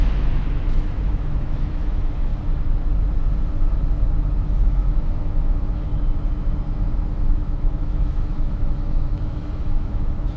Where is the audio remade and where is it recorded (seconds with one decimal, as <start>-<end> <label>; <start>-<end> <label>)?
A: 0.0-2.3 remade; 2.3-4.5 recorded; 4.5-5.9 remade; 5.9-7.1 recorded; 7.1-10.4 remade